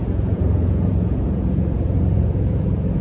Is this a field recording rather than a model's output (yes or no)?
no